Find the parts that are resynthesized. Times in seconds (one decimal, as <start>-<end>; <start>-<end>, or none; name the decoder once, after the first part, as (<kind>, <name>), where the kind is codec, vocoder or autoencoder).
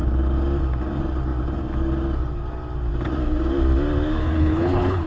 4.2-5.1 (codec, HILCodec)